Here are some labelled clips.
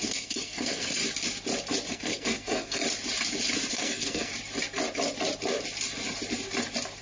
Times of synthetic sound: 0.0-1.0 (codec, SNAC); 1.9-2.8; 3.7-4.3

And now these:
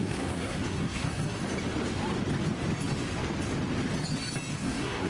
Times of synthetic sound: 0.0-1.4 (codec, SNAC); 4.5-5.1

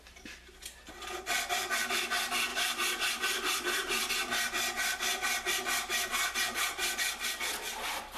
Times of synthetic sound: 2.5-4.1 (vocoder, BigVGAN v2)

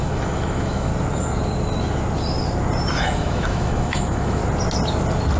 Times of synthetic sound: 0.0-0.9 (autoencoder, DAC-VAE); 3.0-4.4